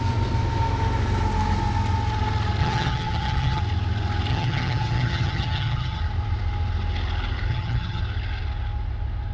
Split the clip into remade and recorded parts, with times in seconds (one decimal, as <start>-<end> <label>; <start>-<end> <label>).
0.0-2.6 recorded; 2.6-3.6 remade; 3.6-4.3 recorded; 4.3-6.0 remade; 6.0-7.5 recorded; 7.5-8.0 remade; 8.0-9.3 recorded

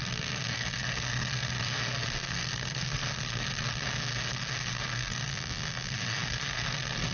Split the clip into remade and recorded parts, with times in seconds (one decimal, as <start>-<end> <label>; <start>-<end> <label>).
0.0-5.3 remade; 5.3-5.9 recorded; 5.9-7.1 remade

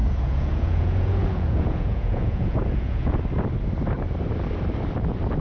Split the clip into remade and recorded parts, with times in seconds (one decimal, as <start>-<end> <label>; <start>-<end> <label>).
0.0-3.2 remade; 3.2-5.4 recorded

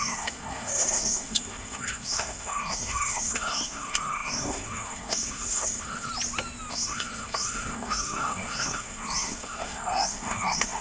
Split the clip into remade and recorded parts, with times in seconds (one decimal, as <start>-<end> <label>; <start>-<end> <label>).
0.0-6.1 remade; 6.1-6.7 recorded; 6.7-10.8 remade

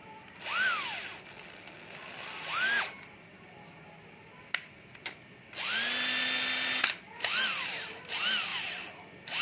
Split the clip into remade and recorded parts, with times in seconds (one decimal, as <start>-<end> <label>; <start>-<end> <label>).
0.0-9.4 recorded

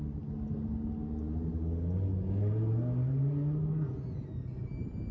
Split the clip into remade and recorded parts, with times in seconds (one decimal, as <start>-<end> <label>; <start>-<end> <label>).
0.0-5.1 recorded